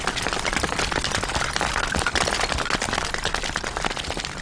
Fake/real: real